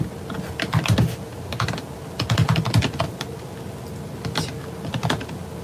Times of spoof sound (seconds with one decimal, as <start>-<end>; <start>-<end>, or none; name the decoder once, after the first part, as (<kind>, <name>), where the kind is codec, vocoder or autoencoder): none